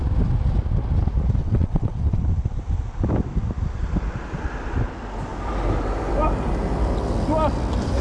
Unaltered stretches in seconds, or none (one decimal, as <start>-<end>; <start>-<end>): 0.0-1.4; 2.2-8.0